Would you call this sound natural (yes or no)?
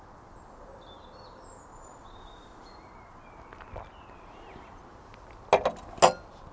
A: yes